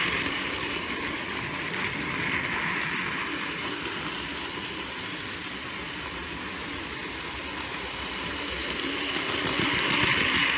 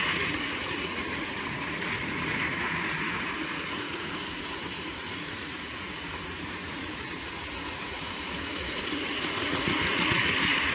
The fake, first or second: second